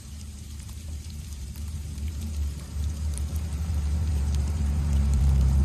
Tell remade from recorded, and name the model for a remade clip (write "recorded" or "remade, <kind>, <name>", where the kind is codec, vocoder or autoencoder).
remade, vocoder, BigVGAN v2